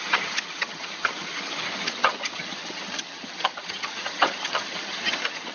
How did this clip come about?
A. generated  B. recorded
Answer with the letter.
A